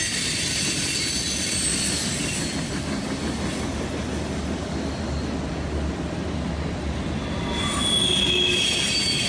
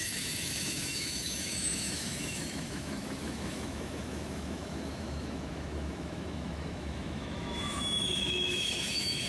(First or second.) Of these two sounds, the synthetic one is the second